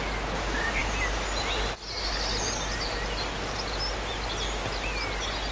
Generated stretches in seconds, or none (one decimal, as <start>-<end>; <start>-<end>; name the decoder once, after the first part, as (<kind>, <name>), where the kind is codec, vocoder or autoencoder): none